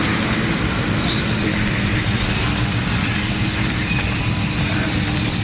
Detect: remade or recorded recorded